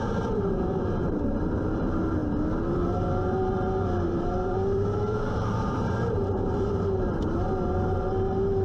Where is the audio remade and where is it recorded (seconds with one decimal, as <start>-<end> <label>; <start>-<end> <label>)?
0.0-2.2 remade; 2.2-2.7 recorded; 2.7-8.6 remade